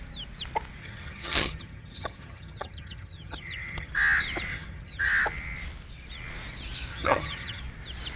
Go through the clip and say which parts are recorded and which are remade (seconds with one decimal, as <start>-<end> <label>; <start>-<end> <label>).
0.0-0.8 recorded; 0.8-3.9 remade; 3.9-4.5 recorded; 4.5-5.1 remade; 5.1-6.9 recorded; 6.9-7.6 remade; 7.6-8.2 recorded

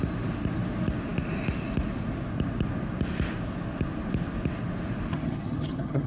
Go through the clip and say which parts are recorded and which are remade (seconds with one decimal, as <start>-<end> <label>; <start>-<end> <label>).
0.0-5.1 recorded; 5.1-6.1 remade